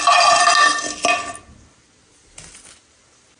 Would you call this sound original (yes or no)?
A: yes